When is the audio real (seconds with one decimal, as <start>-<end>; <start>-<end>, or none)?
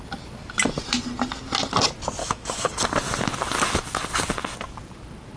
0.0-2.2; 2.7-5.4